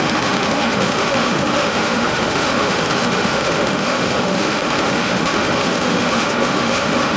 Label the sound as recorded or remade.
remade